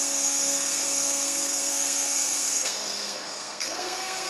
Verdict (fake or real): fake